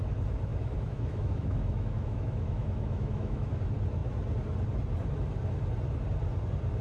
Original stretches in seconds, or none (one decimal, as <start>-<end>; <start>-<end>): 0.0-0.5; 3.6-6.8